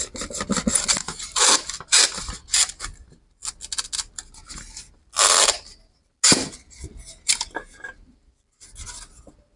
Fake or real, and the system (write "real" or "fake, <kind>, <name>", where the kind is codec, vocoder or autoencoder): real